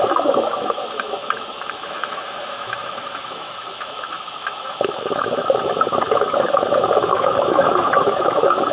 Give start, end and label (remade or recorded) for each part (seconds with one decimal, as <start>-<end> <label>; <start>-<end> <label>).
0.0-8.7 remade